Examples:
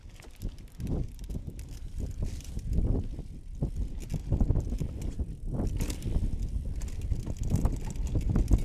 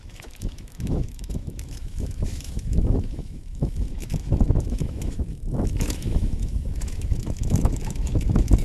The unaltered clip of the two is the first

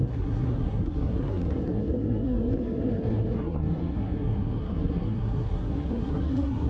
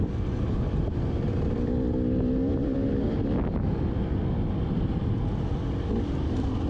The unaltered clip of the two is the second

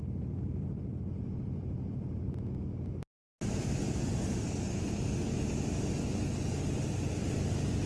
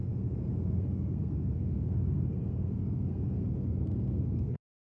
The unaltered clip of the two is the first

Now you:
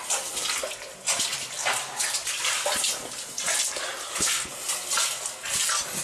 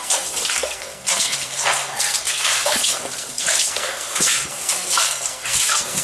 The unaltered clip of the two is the first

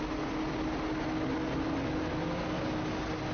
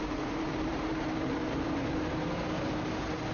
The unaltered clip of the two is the first